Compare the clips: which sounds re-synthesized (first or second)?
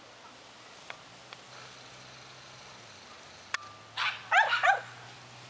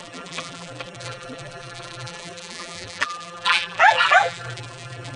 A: second